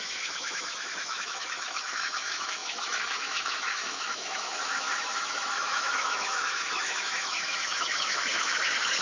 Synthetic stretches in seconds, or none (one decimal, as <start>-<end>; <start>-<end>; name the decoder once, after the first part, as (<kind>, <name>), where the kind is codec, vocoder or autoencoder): 0.0-9.0 (autoencoder, DAC-VAE)